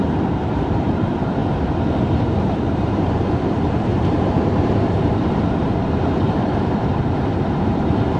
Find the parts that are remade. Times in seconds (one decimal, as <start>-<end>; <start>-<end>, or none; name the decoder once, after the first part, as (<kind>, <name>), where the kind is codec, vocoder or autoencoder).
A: 0.0-1.4 (vocoder, BigVGAN v2); 2.1-8.2